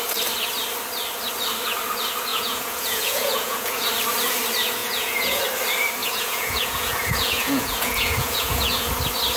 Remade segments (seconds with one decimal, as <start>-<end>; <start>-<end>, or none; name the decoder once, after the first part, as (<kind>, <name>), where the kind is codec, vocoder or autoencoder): 2.3-3.9 (vocoder, Vocos); 4.8-5.4; 6.0-8.9